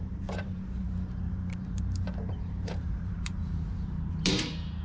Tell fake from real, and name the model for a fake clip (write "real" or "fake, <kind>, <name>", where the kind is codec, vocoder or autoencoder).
fake, vocoder, BigVGAN v2